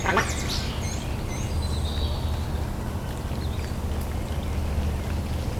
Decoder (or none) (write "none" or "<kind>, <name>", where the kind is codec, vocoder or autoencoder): none